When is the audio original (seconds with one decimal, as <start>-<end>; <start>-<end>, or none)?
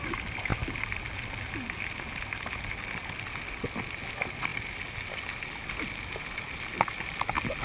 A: 0.0-7.6